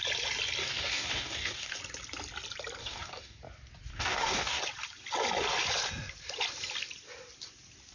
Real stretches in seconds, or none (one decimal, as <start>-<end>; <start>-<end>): 0.0-0.6; 1.8-2.8; 3.4-3.9; 4.6-7.9

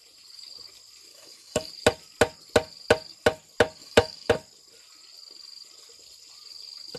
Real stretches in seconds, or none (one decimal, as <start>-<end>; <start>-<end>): 0.0-1.1; 1.7-3.8; 4.3-7.0

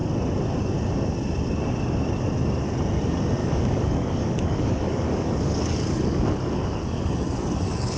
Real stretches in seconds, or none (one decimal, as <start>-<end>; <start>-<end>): 0.0-3.4